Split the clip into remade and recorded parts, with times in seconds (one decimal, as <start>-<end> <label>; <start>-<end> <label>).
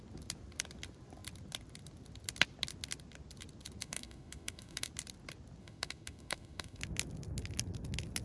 0.0-3.8 recorded; 3.8-4.9 remade; 4.9-5.6 recorded; 5.6-6.8 remade; 6.8-8.2 recorded